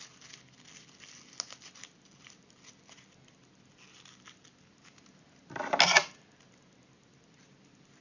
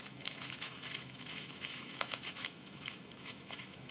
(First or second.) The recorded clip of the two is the first